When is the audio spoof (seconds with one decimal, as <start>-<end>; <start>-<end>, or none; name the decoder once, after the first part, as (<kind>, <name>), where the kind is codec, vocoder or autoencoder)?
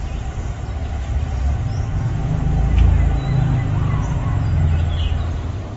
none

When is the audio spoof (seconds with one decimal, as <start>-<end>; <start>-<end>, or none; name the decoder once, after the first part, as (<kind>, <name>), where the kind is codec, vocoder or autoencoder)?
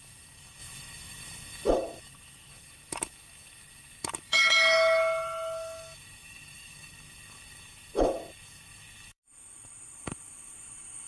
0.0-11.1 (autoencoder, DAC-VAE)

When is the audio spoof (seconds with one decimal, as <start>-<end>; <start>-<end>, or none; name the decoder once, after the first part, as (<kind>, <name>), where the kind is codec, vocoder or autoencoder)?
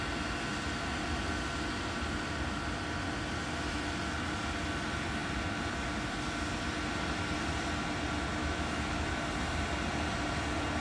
8.4-9.1 (autoencoder, DAC-VAE)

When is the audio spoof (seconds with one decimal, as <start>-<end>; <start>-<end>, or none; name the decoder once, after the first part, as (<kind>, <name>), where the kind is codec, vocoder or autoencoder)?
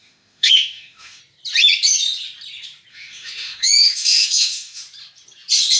0.0-1.2 (autoencoder, DAC-VAE); 2.9-4.8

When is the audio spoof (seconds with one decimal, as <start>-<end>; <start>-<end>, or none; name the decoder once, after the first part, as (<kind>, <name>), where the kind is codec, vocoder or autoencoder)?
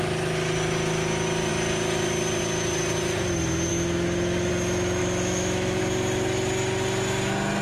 3.7-4.5 (autoencoder, DAC-VAE); 5.0-5.8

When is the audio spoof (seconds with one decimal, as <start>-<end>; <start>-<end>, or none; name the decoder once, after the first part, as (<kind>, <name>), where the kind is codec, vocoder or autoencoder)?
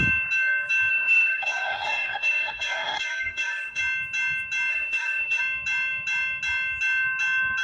0.9-3.8 (autoencoder, DAC-VAE); 4.7-5.4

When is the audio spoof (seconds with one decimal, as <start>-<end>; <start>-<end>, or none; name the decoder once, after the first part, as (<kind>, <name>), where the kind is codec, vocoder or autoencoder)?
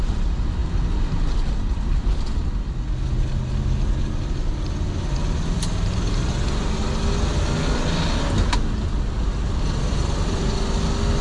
none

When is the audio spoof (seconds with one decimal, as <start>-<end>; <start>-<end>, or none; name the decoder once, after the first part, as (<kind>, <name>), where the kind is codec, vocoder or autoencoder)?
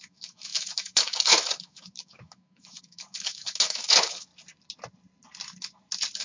0.0-4.3 (autoencoder, DAC-VAE)